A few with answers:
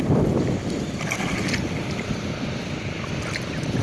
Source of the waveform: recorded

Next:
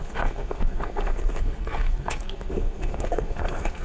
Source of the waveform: remade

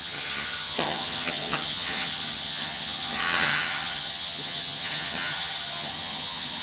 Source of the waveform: remade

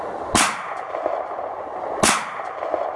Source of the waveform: recorded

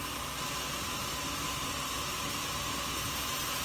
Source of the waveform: recorded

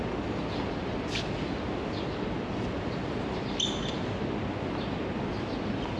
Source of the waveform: recorded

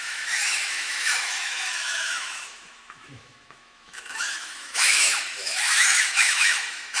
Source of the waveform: remade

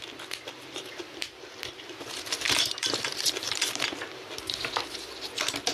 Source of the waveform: remade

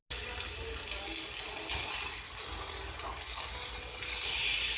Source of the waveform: recorded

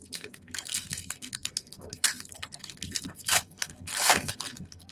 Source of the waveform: remade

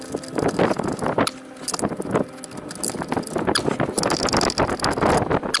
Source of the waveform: recorded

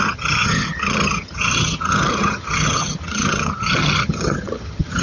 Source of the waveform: remade